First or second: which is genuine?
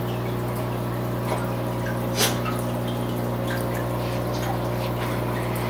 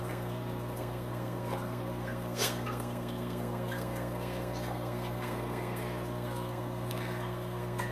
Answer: first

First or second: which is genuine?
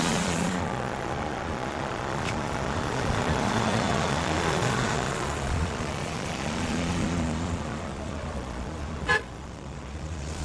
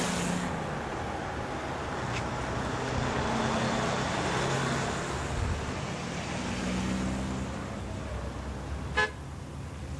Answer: second